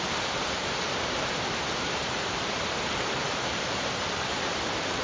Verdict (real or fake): fake